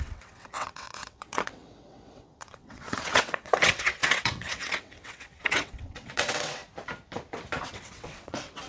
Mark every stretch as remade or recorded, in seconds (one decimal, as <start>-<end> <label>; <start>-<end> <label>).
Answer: 0.0-6.6 remade; 6.6-7.6 recorded; 7.6-8.7 remade